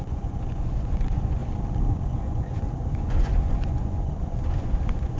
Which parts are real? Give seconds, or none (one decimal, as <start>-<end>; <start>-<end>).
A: 1.4-1.9